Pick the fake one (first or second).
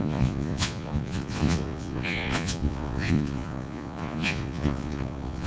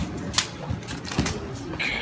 first